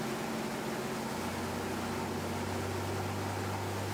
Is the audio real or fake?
real